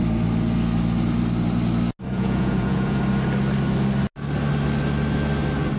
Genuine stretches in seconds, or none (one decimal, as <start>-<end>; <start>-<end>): 0.0-2.1; 3.0-5.8